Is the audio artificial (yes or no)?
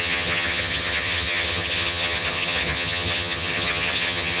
yes